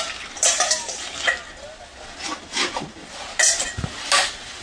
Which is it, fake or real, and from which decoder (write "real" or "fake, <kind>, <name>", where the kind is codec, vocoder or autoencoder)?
real